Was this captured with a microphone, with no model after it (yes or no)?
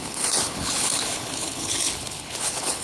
no